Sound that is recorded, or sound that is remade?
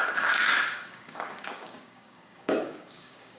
remade